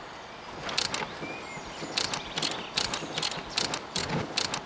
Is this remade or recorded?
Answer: recorded